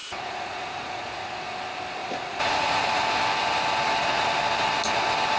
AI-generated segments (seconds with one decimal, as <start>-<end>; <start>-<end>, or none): 0.0-1.4; 2.0-3.0